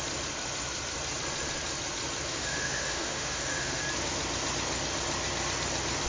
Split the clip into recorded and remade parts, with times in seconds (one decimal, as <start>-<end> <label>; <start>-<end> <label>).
0.0-2.3 recorded; 2.3-3.8 remade; 3.8-6.1 recorded